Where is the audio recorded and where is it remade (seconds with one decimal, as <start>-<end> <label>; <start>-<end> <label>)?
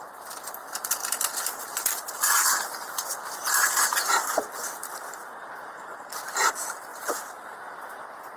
0.0-0.6 recorded; 0.6-2.2 remade; 2.2-4.2 recorded; 4.2-6.1 remade; 6.1-6.9 recorded; 6.9-7.6 remade; 7.6-8.4 recorded